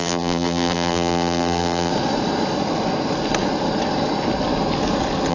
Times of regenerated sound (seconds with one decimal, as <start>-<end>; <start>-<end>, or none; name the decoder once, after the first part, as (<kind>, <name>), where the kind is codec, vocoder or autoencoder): 0.0-1.9 (vocoder, BigVGAN v2)